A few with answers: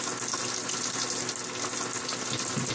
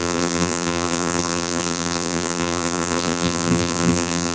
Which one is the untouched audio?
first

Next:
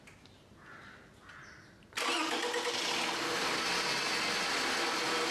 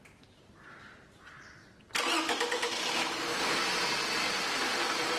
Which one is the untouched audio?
first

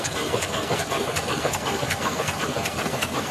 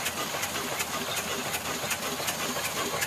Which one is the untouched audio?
second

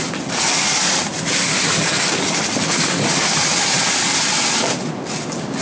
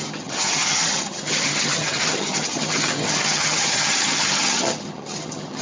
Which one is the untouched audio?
first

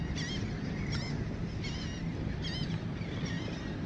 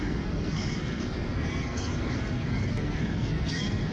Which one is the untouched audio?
first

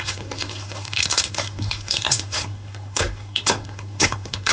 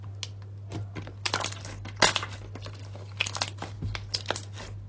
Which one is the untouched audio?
second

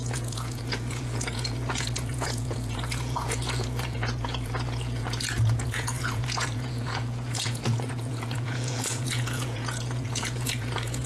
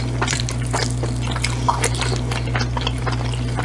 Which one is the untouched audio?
second